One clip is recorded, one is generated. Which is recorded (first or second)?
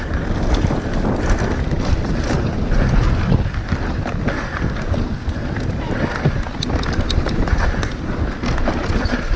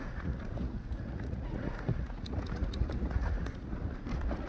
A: first